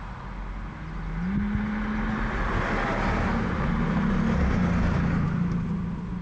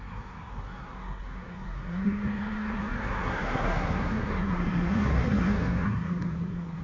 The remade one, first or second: second